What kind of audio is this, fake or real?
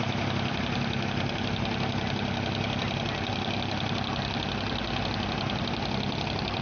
real